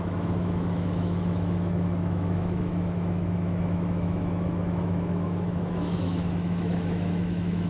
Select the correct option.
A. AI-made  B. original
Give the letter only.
A